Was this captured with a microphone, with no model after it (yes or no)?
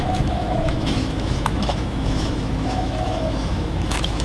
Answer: no